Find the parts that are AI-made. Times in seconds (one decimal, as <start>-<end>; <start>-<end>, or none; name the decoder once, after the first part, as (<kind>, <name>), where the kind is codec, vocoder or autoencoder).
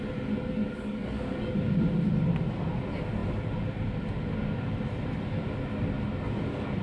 0.4-1.6 (codec, DAC)